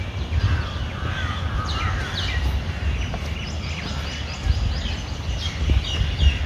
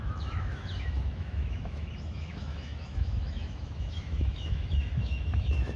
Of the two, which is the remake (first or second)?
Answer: second